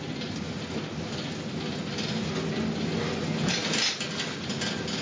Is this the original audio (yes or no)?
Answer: yes